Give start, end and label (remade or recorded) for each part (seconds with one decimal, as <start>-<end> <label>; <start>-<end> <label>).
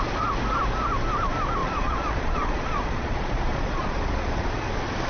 0.0-1.6 recorded; 1.6-4.5 remade; 4.5-5.1 recorded